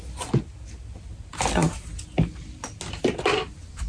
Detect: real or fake real